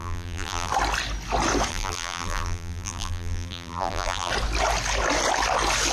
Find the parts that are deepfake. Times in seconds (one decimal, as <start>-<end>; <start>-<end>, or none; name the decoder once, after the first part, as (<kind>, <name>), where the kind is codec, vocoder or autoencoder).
0.0-0.7 (vocoder, BigVGAN v2); 1.7-4.3